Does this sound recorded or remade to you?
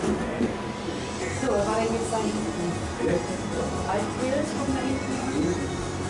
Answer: recorded